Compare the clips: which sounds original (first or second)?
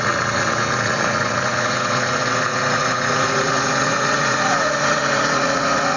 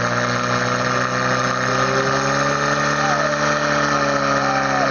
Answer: second